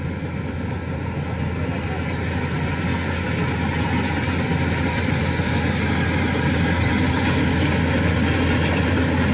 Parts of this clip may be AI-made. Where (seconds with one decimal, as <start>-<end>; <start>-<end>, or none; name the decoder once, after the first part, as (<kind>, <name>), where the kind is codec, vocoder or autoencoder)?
none